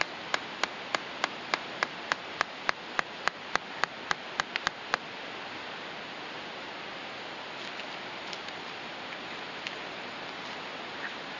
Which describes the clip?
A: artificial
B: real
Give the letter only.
B